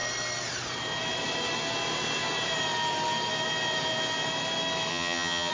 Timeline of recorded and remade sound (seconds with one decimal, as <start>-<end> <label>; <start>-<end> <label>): 0.0-4.9 recorded; 4.9-5.5 remade